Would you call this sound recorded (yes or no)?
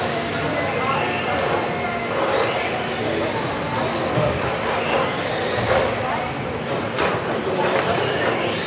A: yes